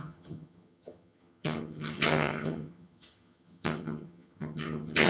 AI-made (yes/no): yes